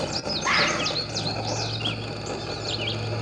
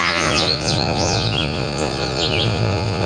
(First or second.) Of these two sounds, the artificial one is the second